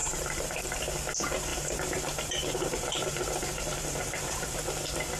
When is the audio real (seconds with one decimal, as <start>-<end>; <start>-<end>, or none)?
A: 0.6-1.5; 4.6-5.2